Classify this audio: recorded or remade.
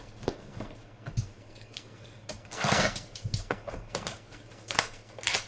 remade